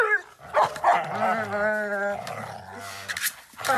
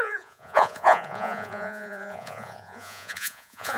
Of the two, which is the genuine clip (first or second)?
first